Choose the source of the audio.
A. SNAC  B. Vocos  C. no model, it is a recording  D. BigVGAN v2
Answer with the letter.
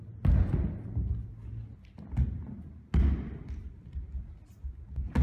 C